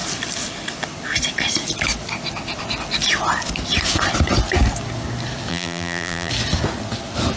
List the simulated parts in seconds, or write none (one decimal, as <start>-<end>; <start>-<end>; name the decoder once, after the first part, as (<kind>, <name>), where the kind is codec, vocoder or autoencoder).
5.5-6.3 (vocoder, BigVGAN v2)